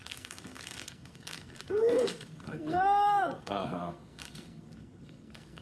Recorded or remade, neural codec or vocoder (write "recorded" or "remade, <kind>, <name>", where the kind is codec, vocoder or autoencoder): remade, codec, SNAC